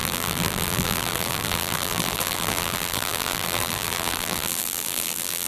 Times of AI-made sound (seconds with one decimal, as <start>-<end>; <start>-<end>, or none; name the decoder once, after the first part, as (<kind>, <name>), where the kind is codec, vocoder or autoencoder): 0.0-5.5 (vocoder, BigVGAN v2)